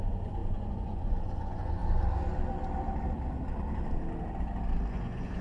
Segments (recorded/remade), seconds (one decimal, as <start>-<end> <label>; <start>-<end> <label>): 0.0-1.8 remade; 1.8-4.9 recorded; 4.9-5.4 remade